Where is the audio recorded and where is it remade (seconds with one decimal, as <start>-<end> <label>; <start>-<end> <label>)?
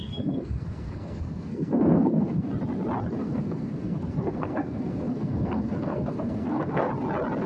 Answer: 0.0-2.5 remade; 2.5-3.2 recorded; 3.2-6.9 remade; 6.9-7.5 recorded